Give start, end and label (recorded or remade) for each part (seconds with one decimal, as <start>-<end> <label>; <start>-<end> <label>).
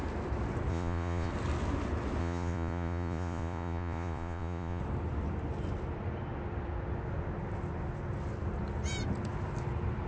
0.0-0.7 recorded; 0.7-1.3 remade; 1.3-2.2 recorded; 2.2-4.8 remade; 4.8-10.1 recorded